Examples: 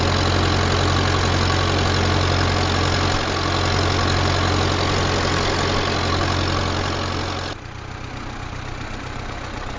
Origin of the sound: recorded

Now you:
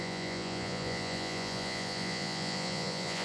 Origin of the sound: remade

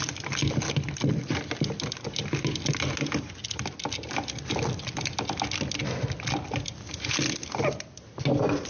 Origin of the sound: recorded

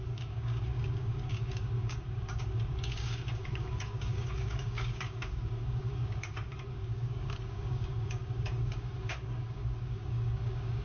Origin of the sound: remade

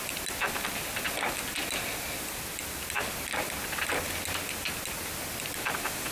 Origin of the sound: recorded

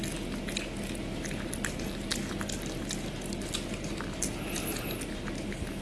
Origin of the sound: recorded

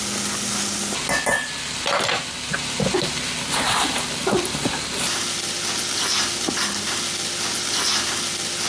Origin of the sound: recorded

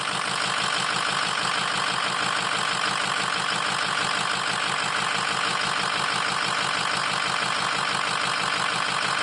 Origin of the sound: recorded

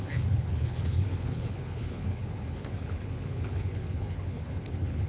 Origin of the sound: remade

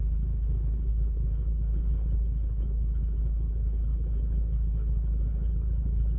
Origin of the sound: remade